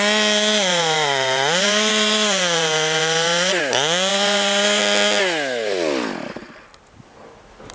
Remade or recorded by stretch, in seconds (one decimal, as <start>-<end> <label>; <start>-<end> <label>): 0.0-0.7 recorded; 0.7-3.6 remade; 3.6-4.1 recorded; 4.1-4.8 remade; 4.8-7.7 recorded